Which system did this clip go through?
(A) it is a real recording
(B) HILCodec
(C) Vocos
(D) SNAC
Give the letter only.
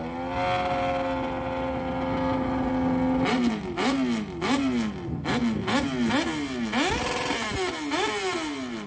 A